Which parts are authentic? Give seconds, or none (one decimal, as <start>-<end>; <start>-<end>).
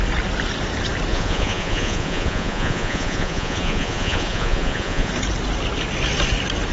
0.0-1.1; 5.1-6.7